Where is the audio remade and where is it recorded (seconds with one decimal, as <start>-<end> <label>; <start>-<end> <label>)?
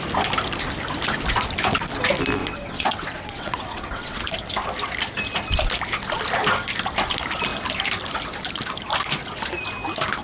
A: 0.0-2.4 recorded; 2.4-4.2 remade; 4.2-10.2 recorded